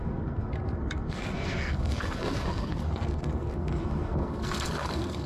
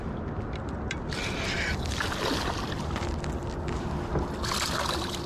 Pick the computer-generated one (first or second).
first